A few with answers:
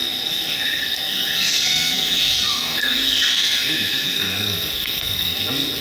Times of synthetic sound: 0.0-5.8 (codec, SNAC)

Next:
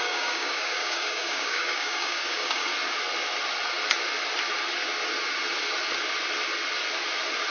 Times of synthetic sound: 0.0-2.7 (codec, DAC)

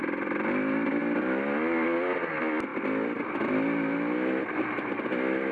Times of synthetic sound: none

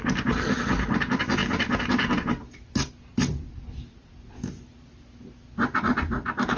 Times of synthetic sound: none

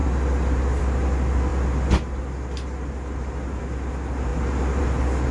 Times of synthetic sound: none